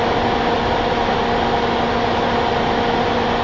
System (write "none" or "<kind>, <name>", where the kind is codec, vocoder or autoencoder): none